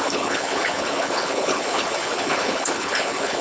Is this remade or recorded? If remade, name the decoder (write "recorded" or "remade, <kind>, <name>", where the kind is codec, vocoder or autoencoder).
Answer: remade, codec, HILCodec